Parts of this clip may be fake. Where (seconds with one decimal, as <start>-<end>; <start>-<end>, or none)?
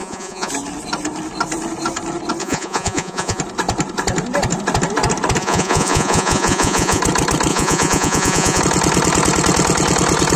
0.0-0.5; 2.4-3.4; 5.4-7.0; 7.5-8.6